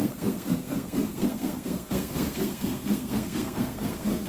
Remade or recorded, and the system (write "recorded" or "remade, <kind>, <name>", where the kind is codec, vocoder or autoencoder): remade, codec, SNAC